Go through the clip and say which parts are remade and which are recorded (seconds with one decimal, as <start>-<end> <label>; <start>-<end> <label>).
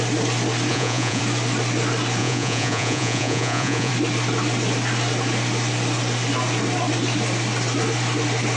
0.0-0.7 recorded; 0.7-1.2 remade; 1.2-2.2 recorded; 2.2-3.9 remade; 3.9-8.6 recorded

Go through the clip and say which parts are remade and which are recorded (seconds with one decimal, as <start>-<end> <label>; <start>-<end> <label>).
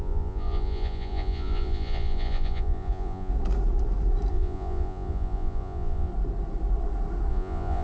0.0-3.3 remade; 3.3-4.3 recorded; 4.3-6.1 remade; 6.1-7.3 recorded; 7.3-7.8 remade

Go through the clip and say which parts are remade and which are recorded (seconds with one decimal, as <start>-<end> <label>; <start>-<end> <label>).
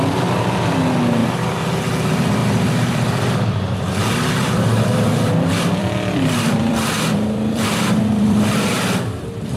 0.0-2.4 recorded; 2.4-5.3 remade; 5.3-5.8 recorded; 5.8-8.4 remade; 8.4-9.6 recorded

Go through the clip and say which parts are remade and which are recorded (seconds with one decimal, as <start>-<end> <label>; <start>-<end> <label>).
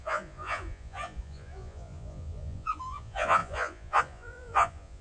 0.0-5.0 remade